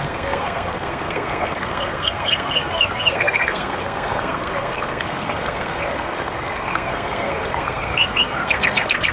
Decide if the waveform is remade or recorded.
remade